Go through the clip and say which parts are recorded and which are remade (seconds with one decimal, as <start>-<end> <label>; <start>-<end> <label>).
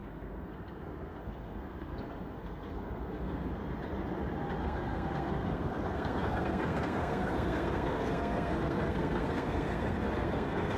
0.0-3.6 remade; 3.6-4.6 recorded; 4.6-10.8 remade